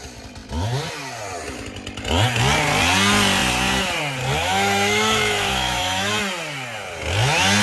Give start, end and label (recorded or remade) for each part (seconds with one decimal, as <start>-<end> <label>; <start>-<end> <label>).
0.0-4.4 recorded; 4.4-6.1 remade; 6.1-7.6 recorded